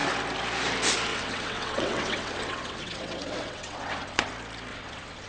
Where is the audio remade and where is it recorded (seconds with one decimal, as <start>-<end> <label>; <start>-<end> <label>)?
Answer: 0.0-1.1 recorded; 1.1-4.3 remade; 4.3-4.7 recorded; 4.7-5.3 remade